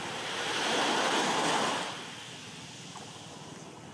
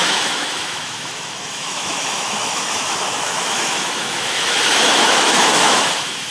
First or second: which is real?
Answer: first